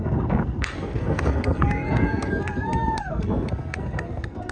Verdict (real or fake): fake